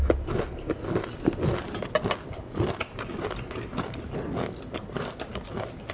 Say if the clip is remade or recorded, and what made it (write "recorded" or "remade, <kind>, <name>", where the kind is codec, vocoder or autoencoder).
recorded